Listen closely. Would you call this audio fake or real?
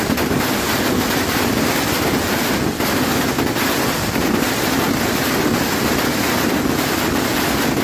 real